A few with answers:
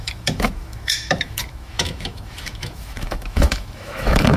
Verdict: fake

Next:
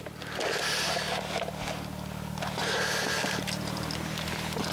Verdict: real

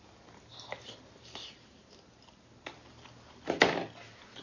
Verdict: real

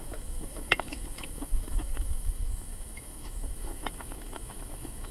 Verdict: fake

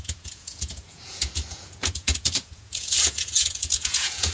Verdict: fake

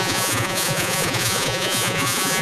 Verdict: fake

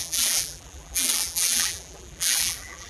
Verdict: fake